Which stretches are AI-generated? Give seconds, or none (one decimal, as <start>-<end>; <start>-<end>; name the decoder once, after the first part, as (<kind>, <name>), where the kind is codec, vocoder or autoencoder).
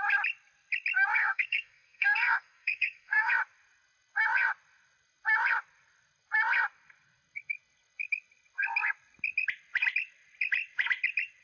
1.2-3.3 (codec, SNAC)